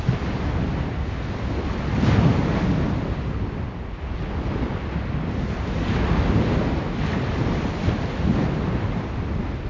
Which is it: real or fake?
real